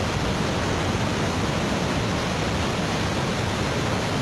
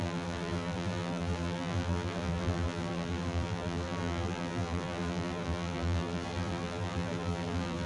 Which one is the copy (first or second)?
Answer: second